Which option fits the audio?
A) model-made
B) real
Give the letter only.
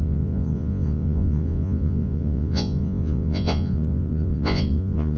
A